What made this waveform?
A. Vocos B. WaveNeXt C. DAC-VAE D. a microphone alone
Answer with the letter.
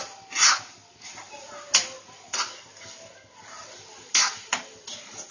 D